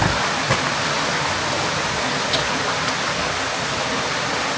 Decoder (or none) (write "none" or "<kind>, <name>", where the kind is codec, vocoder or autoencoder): none